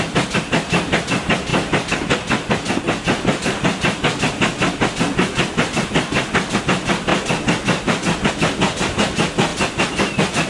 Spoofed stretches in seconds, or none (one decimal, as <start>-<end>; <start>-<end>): none